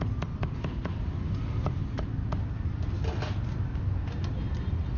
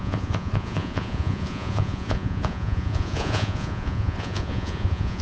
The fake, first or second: second